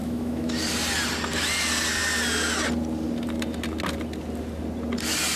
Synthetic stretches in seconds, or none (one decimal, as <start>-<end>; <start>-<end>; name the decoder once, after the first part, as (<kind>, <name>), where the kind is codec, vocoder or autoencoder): 0.0-0.6 (autoencoder, DAC-VAE)